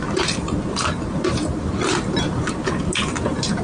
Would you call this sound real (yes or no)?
no